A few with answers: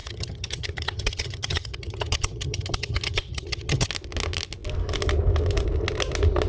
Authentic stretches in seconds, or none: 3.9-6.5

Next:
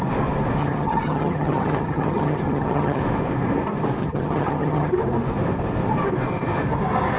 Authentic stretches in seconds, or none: 0.0-0.6; 3.0-4.0; 4.9-7.2

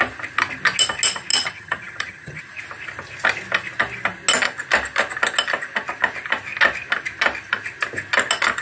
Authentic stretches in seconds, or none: 0.0-1.3; 2.4-8.6

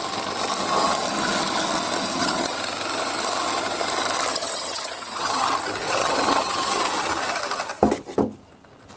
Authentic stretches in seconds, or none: 0.0-2.1; 2.6-4.3; 5.5-6.0; 6.8-9.0

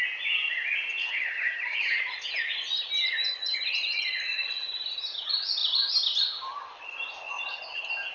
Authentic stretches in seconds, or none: 0.0-1.0; 2.0-8.1

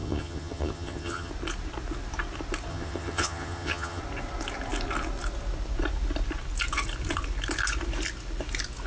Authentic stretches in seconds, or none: 1.3-2.7; 4.0-8.9

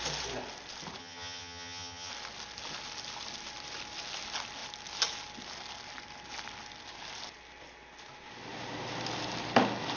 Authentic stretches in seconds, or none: 0.0-1.0; 2.1-10.0

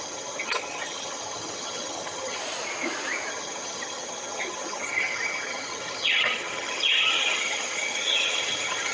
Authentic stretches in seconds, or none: 2.4-3.3